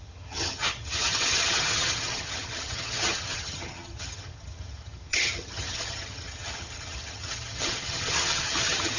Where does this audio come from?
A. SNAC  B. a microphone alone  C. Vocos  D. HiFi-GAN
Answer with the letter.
D